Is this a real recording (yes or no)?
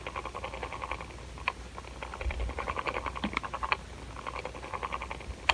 yes